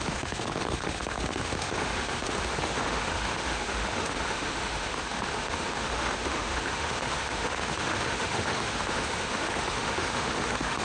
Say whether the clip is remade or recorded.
remade